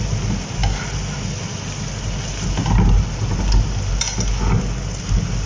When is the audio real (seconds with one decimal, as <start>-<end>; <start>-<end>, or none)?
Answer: 0.0-5.5